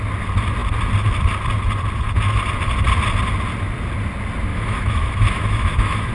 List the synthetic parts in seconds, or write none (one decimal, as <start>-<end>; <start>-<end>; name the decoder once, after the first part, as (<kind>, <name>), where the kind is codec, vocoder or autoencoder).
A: 4.5-6.1 (autoencoder, DAC-VAE)